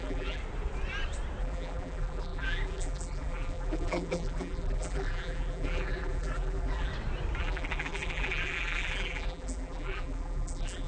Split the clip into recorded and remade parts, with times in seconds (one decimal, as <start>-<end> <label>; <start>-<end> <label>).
0.0-0.4 remade; 0.4-1.4 recorded; 1.4-6.9 remade; 6.9-7.4 recorded; 7.4-10.9 remade